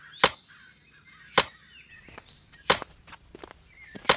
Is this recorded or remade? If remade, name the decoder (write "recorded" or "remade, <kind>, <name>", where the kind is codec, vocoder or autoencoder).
recorded